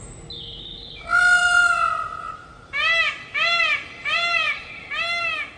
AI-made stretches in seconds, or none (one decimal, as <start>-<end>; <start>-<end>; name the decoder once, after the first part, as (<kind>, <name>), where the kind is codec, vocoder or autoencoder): 1.4-2.5 (vocoder, BigVGAN v2); 4.0-4.9